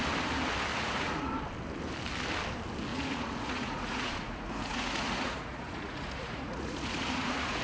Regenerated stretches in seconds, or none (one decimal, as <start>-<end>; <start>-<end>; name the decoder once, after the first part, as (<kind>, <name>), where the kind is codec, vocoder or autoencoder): 0.7-1.3 (vocoder, Vocos); 2.9-7.6